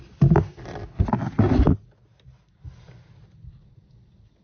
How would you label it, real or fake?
real